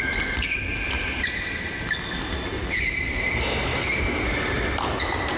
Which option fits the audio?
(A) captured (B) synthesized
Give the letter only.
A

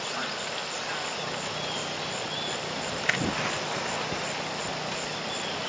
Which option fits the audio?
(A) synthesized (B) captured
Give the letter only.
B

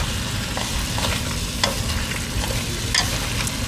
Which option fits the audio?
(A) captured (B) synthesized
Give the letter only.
A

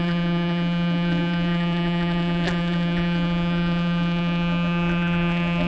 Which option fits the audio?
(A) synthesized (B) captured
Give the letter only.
A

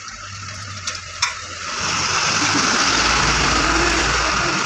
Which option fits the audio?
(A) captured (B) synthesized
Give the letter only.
B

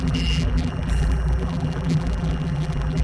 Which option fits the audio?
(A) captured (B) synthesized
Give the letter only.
B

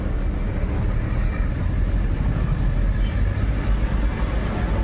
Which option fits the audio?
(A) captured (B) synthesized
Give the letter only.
A